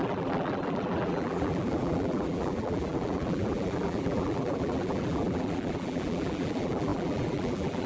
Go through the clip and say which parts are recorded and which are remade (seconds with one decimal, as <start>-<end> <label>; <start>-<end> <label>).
0.0-7.9 remade

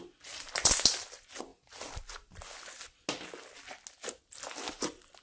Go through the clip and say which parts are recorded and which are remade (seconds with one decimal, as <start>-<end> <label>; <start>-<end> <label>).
0.0-1.5 remade; 1.5-4.2 recorded; 4.2-5.2 remade